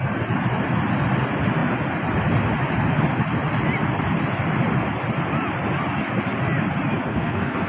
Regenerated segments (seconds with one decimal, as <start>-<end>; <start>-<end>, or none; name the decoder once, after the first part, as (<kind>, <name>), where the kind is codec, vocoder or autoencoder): 7.1-7.7 (codec, SNAC)